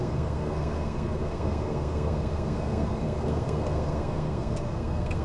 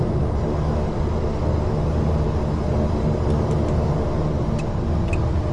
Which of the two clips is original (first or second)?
second